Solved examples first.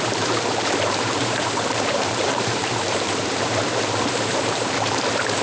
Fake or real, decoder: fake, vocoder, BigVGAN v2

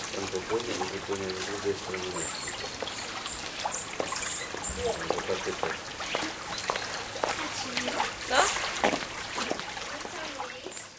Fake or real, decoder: real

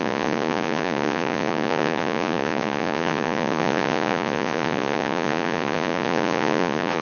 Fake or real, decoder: fake, vocoder, Vocos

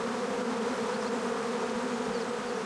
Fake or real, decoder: real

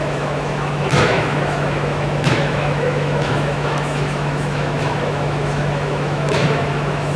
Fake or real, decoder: fake, autoencoder, DAC-VAE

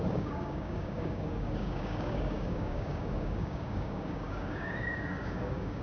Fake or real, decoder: fake, codec, DAC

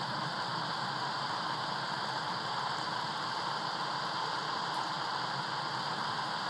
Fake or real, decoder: real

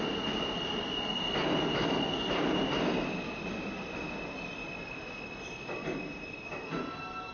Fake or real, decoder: real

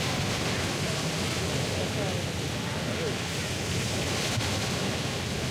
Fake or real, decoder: real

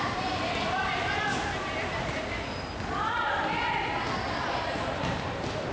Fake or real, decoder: fake, vocoder, BigVGAN v2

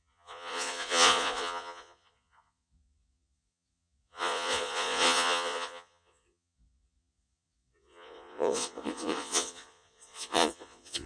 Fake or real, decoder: fake, vocoder, Vocos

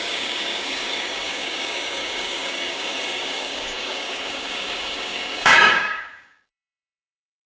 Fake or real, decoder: fake, codec, DAC